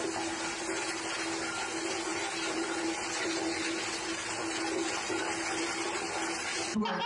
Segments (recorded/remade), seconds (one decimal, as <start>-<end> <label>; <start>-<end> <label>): 0.0-2.1 recorded; 2.1-2.8 remade; 2.8-7.1 recorded